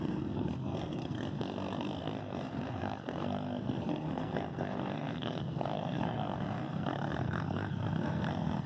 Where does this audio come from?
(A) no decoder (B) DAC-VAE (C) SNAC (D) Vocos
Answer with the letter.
C